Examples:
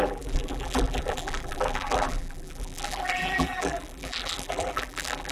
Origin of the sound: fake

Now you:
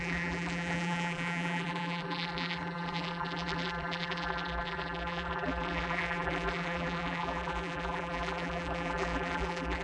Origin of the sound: fake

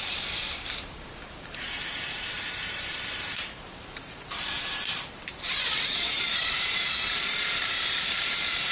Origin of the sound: fake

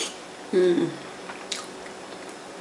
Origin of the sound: real